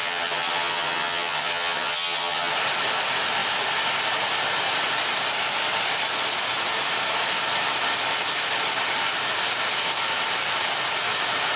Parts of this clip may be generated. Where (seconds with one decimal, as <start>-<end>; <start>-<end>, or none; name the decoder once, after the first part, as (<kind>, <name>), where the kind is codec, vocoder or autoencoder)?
0.0-2.5 (vocoder, HiFi-GAN)